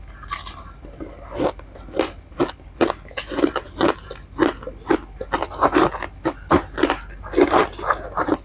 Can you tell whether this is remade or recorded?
recorded